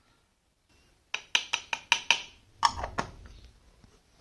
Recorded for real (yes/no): yes